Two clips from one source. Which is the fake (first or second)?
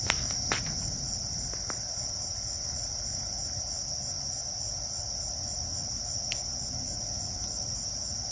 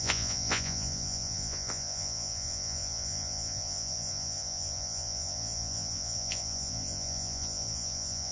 second